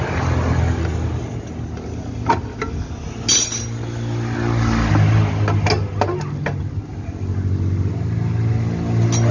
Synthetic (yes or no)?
no